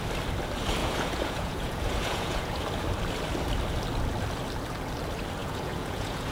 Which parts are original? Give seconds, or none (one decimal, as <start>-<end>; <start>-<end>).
0.0-0.8; 2.6-5.4